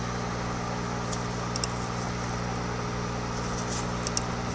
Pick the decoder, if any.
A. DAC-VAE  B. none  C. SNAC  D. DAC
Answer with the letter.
B